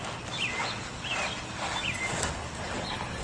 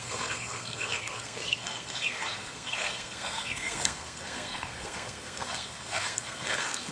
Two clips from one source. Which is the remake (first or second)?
second